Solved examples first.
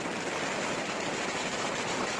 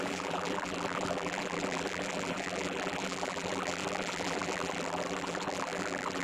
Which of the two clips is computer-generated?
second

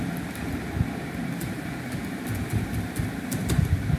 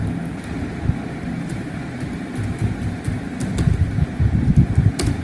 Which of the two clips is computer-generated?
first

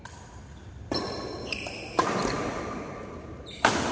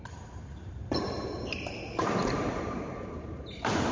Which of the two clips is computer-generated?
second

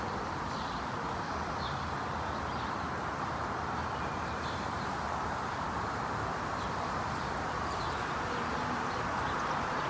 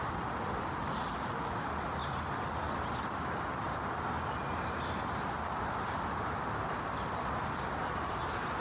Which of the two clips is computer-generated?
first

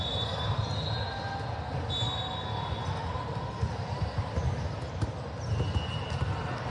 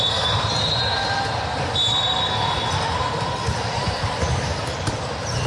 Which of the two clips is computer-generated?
second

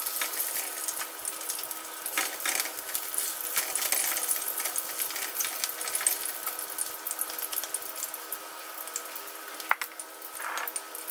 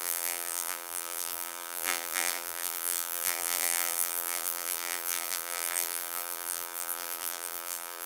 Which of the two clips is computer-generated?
second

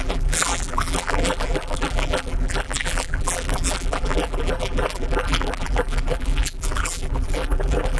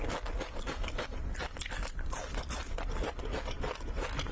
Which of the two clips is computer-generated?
first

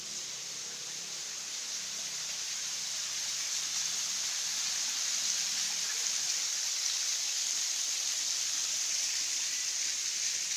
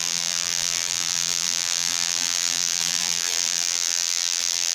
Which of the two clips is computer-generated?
second